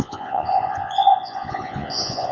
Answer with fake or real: fake